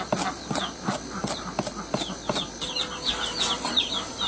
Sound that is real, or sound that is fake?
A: real